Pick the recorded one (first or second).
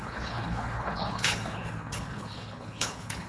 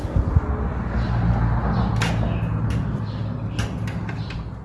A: second